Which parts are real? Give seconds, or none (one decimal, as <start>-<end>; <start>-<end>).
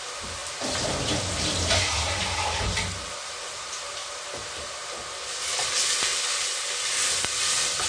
0.0-7.9